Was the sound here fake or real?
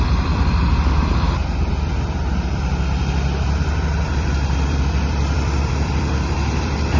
fake